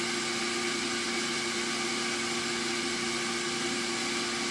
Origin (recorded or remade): recorded